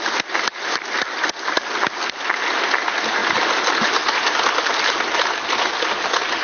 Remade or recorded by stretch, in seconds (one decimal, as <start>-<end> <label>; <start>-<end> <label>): 0.0-6.4 recorded